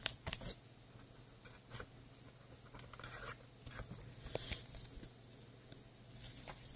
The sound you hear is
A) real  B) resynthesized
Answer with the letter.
A